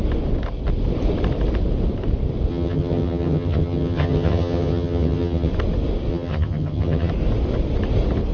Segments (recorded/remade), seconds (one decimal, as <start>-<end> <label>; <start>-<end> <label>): 0.0-2.5 recorded; 2.5-5.5 remade; 5.5-6.1 recorded; 6.1-7.1 remade; 7.1-8.3 recorded